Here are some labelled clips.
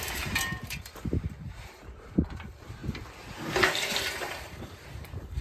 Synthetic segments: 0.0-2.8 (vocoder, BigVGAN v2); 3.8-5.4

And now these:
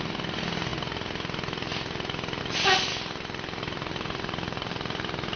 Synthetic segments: none

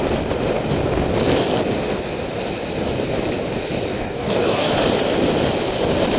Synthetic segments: 3.9-4.7 (codec, DAC)

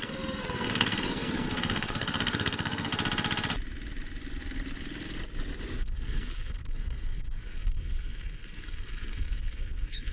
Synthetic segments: 0.0-2.9 (codec, SNAC); 5.8-10.1

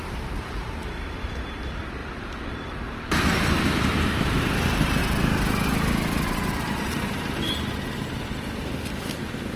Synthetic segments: 0.0-2.0 (vocoder, BigVGAN v2); 2.5-5.0; 9.2-9.6